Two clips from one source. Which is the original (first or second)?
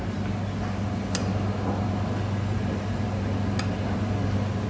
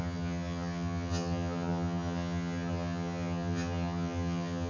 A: first